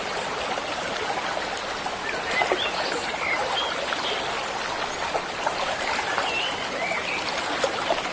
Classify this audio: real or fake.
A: real